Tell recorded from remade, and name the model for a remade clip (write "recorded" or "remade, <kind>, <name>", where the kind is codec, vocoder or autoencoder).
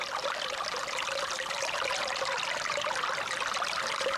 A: recorded